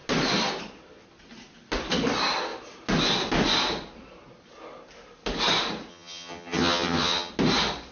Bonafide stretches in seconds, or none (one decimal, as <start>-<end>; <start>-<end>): 0.0-5.9; 7.3-7.9